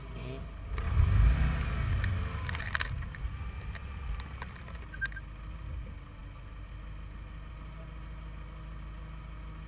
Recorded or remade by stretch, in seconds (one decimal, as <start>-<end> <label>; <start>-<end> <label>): 0.0-9.7 recorded

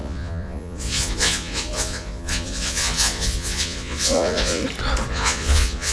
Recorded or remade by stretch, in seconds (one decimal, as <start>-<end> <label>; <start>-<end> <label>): 0.0-4.6 remade; 4.6-5.1 recorded; 5.1-5.9 remade

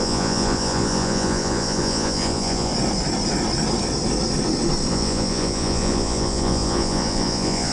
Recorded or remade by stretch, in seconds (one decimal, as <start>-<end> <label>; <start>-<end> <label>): 0.0-2.7 remade; 2.7-4.9 recorded; 4.9-7.7 remade

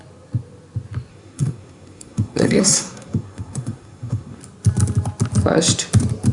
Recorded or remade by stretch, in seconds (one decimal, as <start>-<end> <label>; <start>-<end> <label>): 0.0-1.1 recorded; 1.1-4.4 remade; 4.4-6.3 recorded

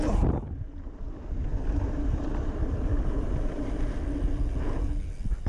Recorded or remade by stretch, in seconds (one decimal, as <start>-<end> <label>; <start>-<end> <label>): 0.0-1.5 recorded; 1.5-3.6 remade; 3.6-5.5 recorded

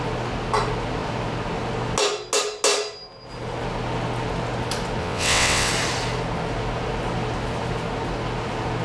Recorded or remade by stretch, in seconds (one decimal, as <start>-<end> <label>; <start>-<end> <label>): 0.0-5.0 recorded; 5.0-5.7 remade; 5.7-8.8 recorded